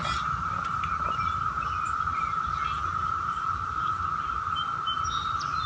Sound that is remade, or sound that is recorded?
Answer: recorded